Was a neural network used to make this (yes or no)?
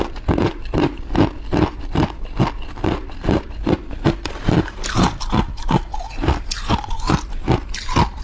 no